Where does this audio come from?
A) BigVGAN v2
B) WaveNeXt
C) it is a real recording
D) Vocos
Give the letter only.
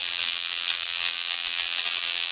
A